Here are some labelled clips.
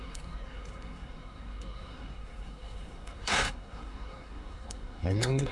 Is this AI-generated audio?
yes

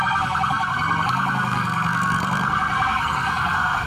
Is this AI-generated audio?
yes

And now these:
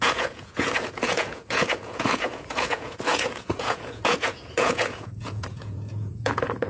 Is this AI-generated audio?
yes